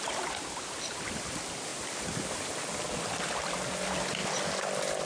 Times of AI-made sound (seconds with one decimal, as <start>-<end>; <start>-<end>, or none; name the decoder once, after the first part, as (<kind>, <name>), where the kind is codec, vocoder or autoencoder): none